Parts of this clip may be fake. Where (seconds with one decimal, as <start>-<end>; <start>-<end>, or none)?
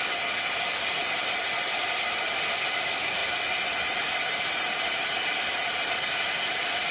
none